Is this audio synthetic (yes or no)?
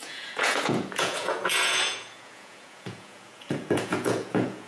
yes